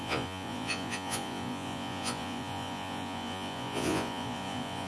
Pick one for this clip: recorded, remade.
remade